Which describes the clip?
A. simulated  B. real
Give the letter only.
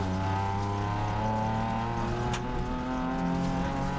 B